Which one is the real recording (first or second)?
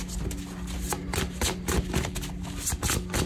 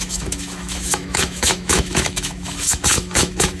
first